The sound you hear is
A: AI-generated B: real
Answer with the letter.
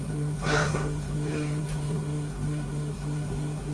A